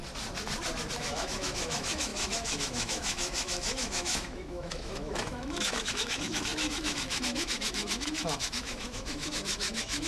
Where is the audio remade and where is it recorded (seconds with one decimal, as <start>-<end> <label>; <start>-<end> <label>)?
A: 0.0-1.0 recorded; 1.0-10.1 remade